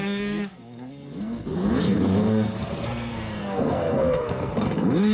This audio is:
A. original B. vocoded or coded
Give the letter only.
B